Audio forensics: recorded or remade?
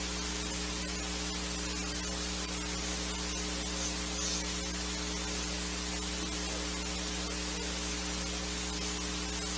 recorded